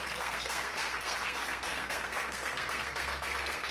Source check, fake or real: fake